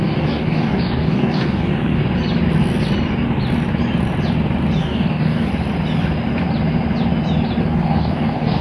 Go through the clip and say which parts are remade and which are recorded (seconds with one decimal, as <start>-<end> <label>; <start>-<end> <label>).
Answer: 0.0-2.0 remade; 2.0-4.8 recorded; 4.8-5.5 remade; 5.5-7.6 recorded; 7.6-8.6 remade